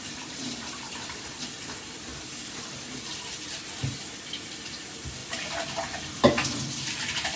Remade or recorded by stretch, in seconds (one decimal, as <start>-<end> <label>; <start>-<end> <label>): 0.0-2.1 remade; 2.1-4.2 recorded; 4.2-7.4 remade